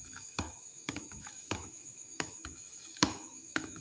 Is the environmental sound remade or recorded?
remade